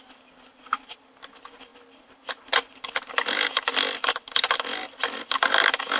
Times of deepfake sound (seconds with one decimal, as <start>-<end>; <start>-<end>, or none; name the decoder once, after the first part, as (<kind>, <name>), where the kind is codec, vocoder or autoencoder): none